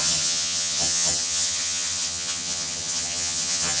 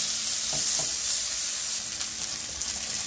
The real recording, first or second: second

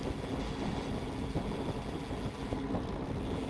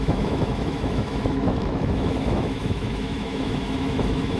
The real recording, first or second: first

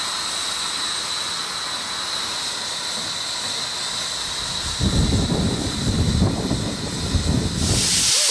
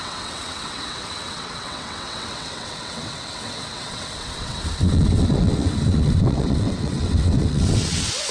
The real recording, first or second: first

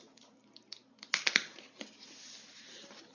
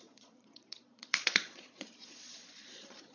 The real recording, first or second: first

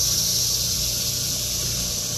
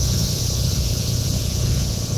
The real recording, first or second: first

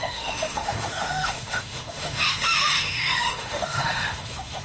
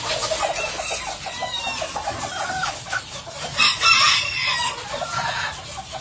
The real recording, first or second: second